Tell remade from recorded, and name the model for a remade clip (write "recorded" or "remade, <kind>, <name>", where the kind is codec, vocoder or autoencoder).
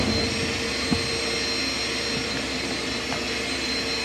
recorded